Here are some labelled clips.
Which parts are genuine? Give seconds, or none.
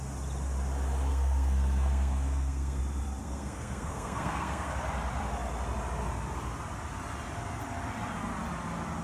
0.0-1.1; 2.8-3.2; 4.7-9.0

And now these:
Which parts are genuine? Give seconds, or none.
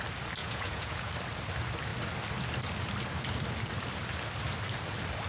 0.0-0.4; 1.1-5.3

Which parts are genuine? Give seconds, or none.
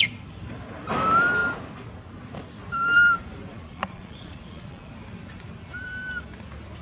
0.0-3.5; 4.9-6.8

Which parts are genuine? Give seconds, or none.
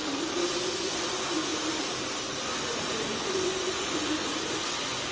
0.0-0.6; 1.5-2.4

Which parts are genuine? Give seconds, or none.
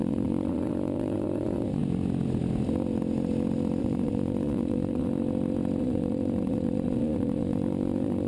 1.8-3.8; 5.1-5.8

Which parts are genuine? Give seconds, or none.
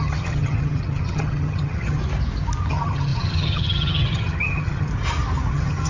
2.0-2.7; 4.9-5.5